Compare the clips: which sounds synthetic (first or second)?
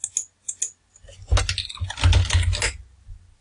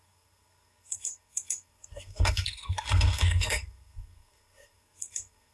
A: second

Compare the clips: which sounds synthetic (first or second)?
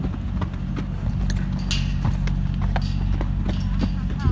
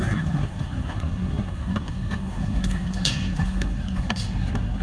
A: second